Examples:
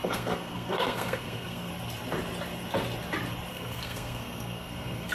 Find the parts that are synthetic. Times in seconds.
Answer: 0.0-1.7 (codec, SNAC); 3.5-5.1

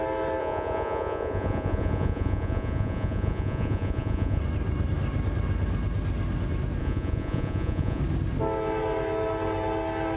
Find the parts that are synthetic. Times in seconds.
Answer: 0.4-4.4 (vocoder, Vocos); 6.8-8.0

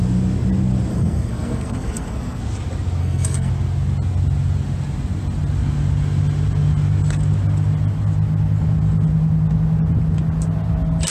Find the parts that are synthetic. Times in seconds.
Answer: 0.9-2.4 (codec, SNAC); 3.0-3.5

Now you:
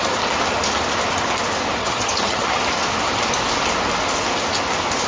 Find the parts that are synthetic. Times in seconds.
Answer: 1.8-2.6 (vocoder, HiFi-GAN)

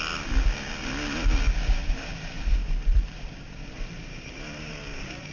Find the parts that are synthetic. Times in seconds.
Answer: 1.8-5.3 (vocoder, BigVGAN v2)

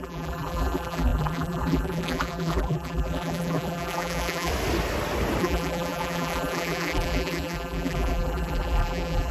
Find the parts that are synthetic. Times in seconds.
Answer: 0.0-4.5 (vocoder, BigVGAN v2); 5.4-9.3

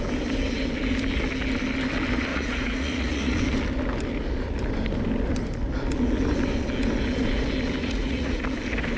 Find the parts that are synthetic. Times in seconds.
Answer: 2.3-3.4 (vocoder, Vocos); 7.8-8.4

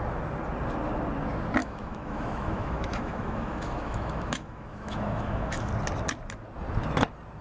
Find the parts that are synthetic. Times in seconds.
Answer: 1.6-5.7 (autoencoder, DAC-VAE)